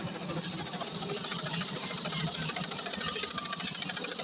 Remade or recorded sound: recorded